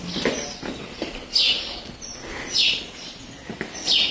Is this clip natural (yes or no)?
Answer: yes